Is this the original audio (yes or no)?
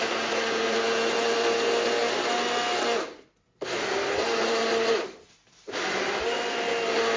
yes